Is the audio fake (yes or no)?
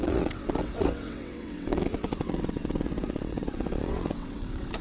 yes